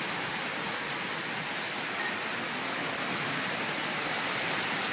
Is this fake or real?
real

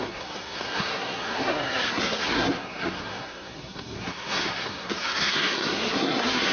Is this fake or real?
fake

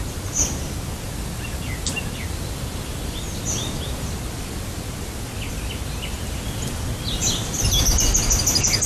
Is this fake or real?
real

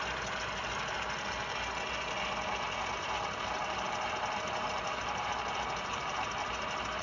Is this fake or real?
real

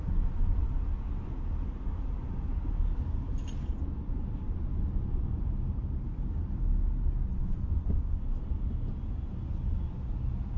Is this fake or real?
real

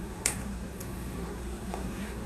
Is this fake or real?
fake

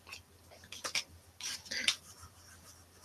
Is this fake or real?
real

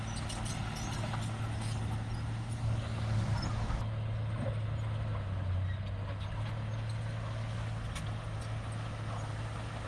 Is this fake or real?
real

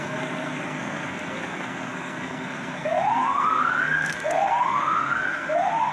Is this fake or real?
fake